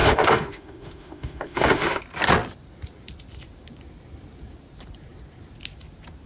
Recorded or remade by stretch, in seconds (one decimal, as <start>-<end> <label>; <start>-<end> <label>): 0.0-2.0 remade; 2.0-6.3 recorded

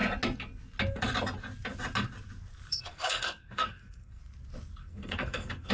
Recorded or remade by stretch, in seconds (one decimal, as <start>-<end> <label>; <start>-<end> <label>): 0.0-2.7 recorded; 2.7-4.2 remade; 4.2-4.8 recorded; 4.8-5.7 remade

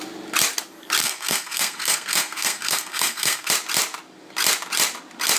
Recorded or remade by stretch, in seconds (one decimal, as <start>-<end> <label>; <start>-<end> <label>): 0.0-1.0 recorded; 1.0-3.5 remade; 3.5-5.4 recorded

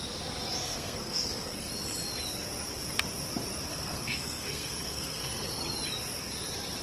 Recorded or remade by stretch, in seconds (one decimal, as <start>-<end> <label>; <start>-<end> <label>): 0.0-0.6 recorded; 0.6-1.7 remade; 1.7-3.7 recorded; 3.7-5.6 remade; 5.6-6.8 recorded

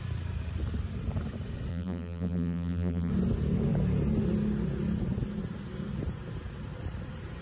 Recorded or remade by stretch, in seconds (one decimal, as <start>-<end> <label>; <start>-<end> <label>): 0.0-1.7 recorded; 1.7-3.1 remade; 3.1-7.4 recorded

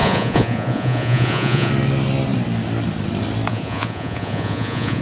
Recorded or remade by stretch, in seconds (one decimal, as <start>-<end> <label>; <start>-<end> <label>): 0.0-1.7 remade; 1.7-3.5 recorded; 3.5-5.0 remade

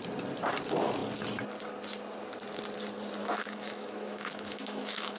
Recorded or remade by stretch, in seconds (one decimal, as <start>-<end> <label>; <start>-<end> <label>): 0.0-3.2 recorded; 3.2-5.2 remade

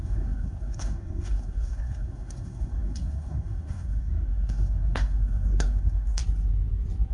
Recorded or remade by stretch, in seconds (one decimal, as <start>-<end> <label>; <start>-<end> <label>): 0.0-6.2 remade; 6.2-7.1 recorded